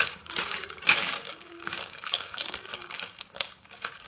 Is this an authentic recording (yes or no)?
no